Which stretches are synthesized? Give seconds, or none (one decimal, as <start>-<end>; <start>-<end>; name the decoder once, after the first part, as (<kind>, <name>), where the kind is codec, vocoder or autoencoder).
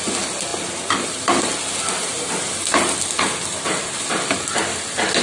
none